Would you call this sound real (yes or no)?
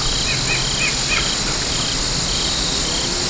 yes